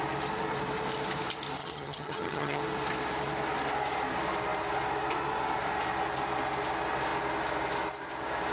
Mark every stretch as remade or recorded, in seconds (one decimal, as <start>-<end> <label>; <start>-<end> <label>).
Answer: 0.0-1.6 recorded; 1.6-2.6 remade; 2.6-8.5 recorded